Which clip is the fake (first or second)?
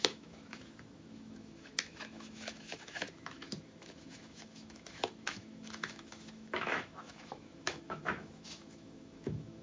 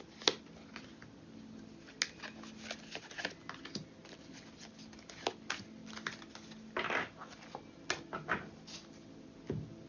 first